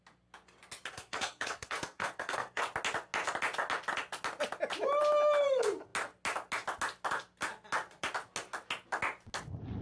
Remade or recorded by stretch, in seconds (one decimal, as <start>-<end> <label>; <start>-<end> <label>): 0.0-0.9 recorded; 0.9-2.6 remade; 2.6-9.8 recorded